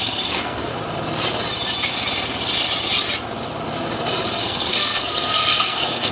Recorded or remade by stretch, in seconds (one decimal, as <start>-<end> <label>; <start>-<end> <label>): 0.0-0.7 remade; 0.7-4.4 recorded; 4.4-6.1 remade